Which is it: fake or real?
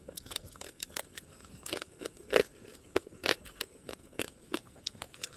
fake